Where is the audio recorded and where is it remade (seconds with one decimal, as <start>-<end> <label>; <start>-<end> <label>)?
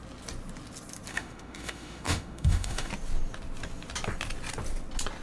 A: 0.0-1.1 recorded; 1.1-2.9 remade; 2.9-5.2 recorded